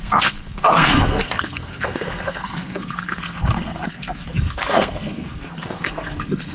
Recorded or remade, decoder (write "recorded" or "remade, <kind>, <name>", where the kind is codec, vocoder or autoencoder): remade, codec, SNAC